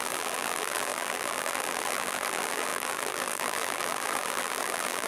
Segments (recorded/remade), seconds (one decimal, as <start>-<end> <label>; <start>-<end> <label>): 0.0-5.1 remade